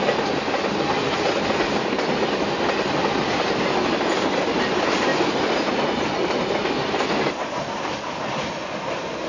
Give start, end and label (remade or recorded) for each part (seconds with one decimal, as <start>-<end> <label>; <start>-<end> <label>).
0.0-9.3 recorded